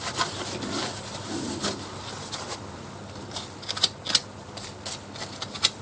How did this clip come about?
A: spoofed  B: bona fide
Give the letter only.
B